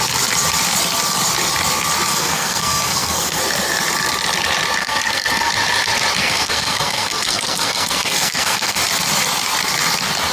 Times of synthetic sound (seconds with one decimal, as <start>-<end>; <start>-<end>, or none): 2.1-3.4; 4.8-5.5; 6.2-8.8